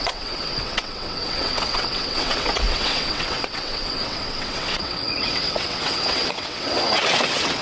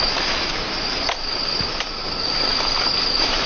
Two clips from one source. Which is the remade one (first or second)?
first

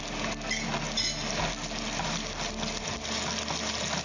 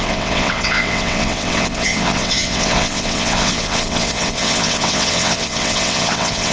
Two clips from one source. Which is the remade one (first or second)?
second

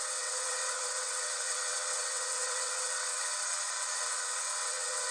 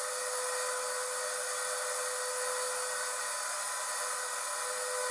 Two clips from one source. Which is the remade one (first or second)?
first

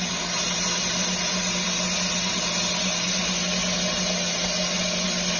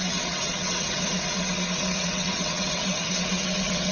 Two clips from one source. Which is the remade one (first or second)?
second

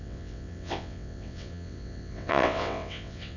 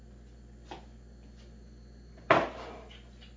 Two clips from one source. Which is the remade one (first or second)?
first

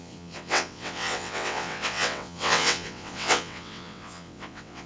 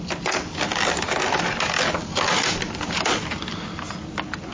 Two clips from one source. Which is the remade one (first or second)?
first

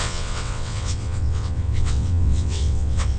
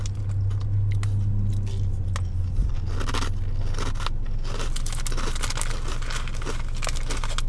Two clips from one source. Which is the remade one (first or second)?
first